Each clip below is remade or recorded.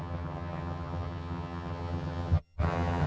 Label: remade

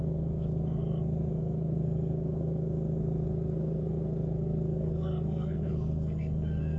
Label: remade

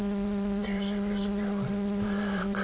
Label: remade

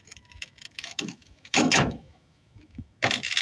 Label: remade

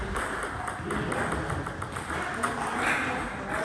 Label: recorded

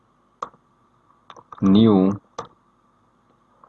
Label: recorded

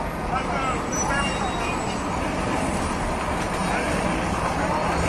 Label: recorded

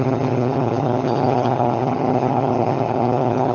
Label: remade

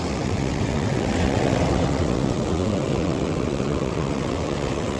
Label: remade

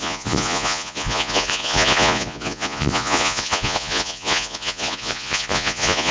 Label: remade